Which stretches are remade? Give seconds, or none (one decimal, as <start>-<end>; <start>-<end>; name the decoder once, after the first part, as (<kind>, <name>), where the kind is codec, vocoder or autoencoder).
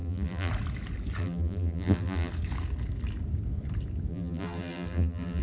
0.0-0.5 (vocoder, BigVGAN v2); 1.2-2.3; 4.1-5.4